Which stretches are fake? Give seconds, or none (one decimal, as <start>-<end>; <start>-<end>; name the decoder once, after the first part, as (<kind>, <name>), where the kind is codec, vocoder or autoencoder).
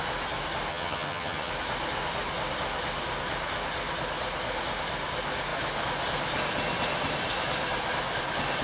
0.7-1.5 (vocoder, HiFi-GAN)